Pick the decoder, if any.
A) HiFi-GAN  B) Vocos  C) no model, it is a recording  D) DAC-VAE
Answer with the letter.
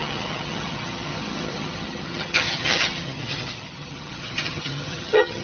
A